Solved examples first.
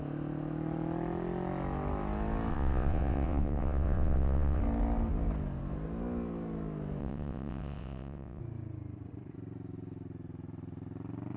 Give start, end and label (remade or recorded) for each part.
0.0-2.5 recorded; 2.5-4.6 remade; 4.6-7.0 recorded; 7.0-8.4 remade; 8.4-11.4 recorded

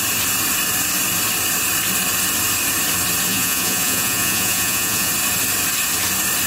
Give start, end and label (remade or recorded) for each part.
0.0-3.3 recorded; 3.3-5.1 remade; 5.1-6.5 recorded

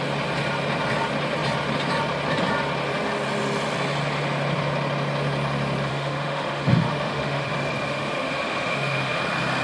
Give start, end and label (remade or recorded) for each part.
0.0-5.9 recorded; 5.9-7.5 remade; 7.5-7.9 recorded; 7.9-9.2 remade; 9.2-9.6 recorded

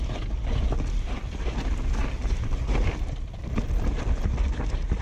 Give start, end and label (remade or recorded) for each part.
0.0-2.0 recorded; 2.0-2.9 remade; 2.9-5.0 recorded

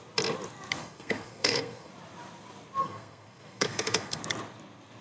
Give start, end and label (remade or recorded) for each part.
0.0-0.8 recorded; 0.8-1.9 remade; 1.9-2.8 recorded; 2.8-4.2 remade; 4.2-5.0 recorded